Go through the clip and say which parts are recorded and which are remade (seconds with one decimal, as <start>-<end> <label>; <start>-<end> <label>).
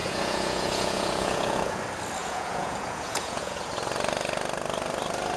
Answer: 0.0-1.8 remade; 1.8-2.2 recorded; 2.2-3.7 remade; 3.7-5.4 recorded